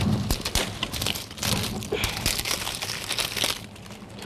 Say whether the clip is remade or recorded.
recorded